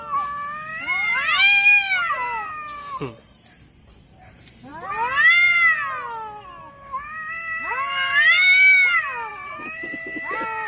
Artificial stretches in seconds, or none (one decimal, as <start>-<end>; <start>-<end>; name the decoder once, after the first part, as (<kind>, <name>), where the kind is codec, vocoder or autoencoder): none